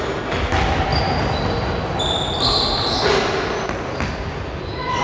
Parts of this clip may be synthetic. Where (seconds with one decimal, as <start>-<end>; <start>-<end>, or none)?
none